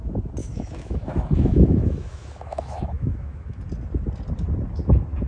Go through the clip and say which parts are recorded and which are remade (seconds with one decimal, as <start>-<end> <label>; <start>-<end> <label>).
0.0-0.4 recorded; 0.4-3.6 remade; 3.6-5.3 recorded